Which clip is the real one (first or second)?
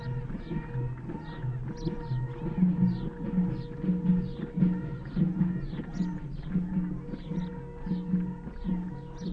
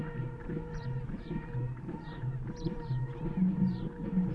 first